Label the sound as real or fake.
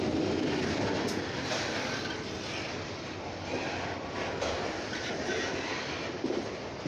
real